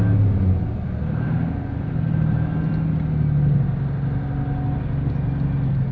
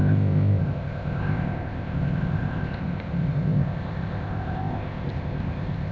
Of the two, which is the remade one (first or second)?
second